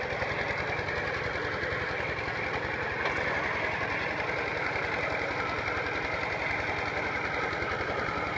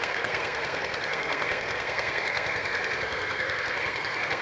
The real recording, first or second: first